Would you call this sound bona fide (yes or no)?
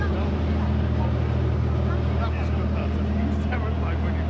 yes